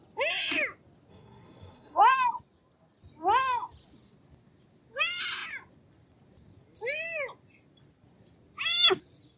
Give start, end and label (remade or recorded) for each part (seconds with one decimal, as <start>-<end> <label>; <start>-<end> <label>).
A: 0.0-1.1 recorded; 1.1-2.0 remade; 2.0-9.4 recorded

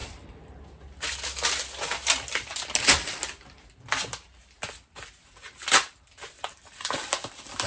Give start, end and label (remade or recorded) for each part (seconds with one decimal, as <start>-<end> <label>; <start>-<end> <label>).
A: 0.0-7.7 recorded

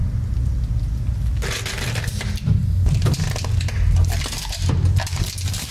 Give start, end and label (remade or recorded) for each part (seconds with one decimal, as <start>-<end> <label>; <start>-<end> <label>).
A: 0.0-1.9 recorded; 1.9-5.7 remade

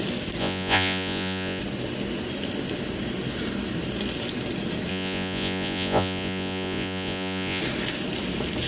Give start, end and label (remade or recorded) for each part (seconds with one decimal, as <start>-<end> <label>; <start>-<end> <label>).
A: 0.0-0.4 recorded; 0.4-1.6 remade; 1.6-4.9 recorded; 4.9-7.6 remade; 7.6-8.7 recorded

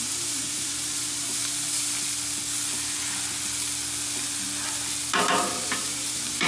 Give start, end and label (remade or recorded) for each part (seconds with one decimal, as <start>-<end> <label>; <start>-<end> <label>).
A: 0.0-1.4 remade; 1.4-5.3 recorded; 5.3-6.5 remade

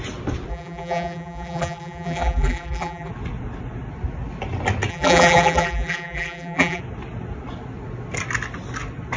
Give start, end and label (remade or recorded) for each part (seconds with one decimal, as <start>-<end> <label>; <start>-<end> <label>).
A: 0.0-0.5 recorded; 0.5-3.1 remade; 3.1-4.9 recorded; 4.9-6.8 remade; 6.8-9.2 recorded

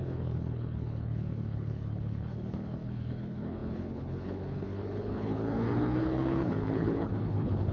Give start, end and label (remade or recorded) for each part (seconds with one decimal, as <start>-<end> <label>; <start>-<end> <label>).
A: 0.0-7.7 remade